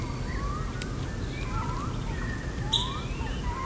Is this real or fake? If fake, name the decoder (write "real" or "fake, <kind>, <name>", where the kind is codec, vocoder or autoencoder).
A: real